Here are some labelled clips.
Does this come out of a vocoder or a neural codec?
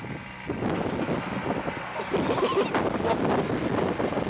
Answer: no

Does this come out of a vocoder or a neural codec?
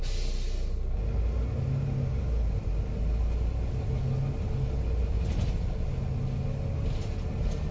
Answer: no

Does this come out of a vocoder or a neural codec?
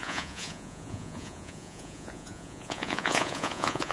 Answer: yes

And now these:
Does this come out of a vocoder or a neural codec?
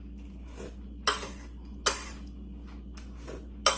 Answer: no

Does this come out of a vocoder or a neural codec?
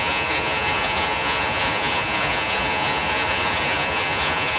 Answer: yes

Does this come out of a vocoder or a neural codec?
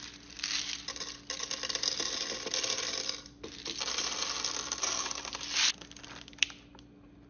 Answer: no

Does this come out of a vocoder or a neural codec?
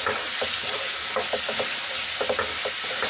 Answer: no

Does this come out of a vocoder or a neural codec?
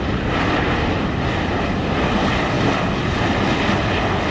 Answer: no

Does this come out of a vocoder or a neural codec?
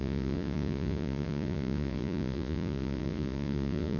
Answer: yes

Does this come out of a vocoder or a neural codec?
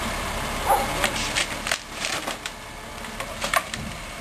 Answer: no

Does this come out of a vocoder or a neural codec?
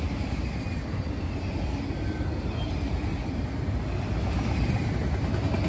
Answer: no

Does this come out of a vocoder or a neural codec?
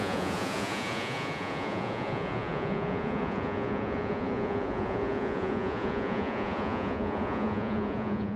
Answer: yes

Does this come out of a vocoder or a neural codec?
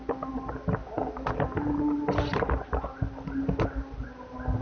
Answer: no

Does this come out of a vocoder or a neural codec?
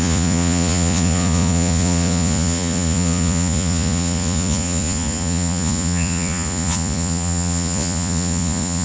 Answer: yes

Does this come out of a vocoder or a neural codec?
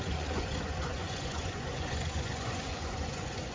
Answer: yes